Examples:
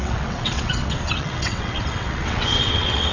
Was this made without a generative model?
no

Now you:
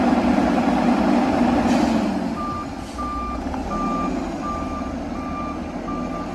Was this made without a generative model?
yes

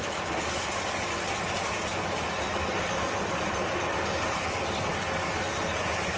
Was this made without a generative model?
yes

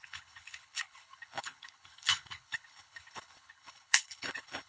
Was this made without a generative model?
no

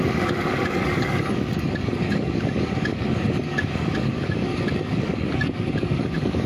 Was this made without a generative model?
no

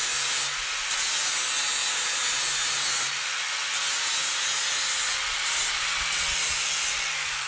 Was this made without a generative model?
yes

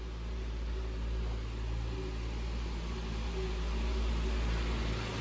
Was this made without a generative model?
yes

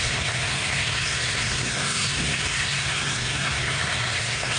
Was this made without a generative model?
no